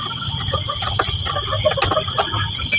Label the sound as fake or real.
real